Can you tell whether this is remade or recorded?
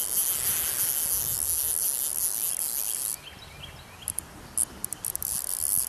recorded